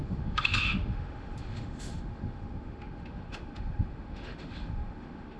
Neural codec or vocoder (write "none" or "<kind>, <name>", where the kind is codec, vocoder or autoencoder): autoencoder, DAC-VAE